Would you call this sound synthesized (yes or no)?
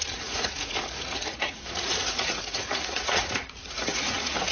yes